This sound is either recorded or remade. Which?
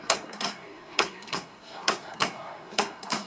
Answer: remade